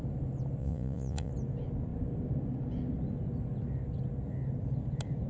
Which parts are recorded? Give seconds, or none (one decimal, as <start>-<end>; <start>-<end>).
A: 0.0-0.6; 1.3-5.3